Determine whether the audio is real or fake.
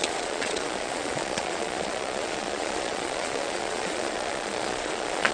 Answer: fake